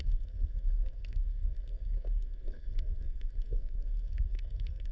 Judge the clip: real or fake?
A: fake